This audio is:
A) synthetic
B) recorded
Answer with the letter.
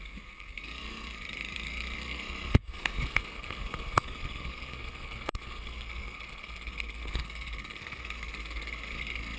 A